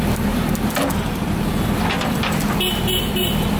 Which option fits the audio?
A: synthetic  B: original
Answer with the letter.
A